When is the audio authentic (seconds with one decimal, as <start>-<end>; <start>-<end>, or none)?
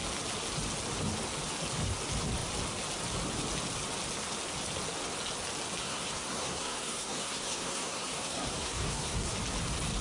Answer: 0.0-5.8; 9.3-10.0